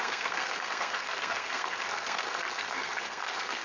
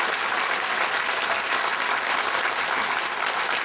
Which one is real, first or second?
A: second